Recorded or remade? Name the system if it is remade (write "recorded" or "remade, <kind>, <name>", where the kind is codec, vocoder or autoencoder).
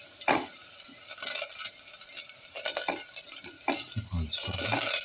recorded